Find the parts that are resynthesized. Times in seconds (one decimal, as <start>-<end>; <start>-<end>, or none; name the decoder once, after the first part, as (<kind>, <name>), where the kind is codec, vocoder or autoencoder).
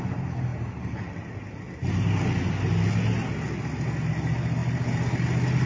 none